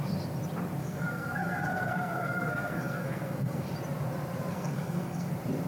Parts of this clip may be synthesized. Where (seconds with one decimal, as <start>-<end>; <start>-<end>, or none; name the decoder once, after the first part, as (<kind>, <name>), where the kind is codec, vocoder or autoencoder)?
0.8-3.7 (codec, SNAC); 4.5-5.3